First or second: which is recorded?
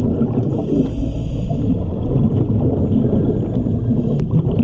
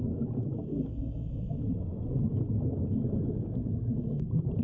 first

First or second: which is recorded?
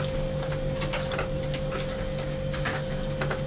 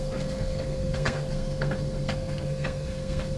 first